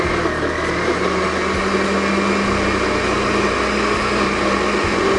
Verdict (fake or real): real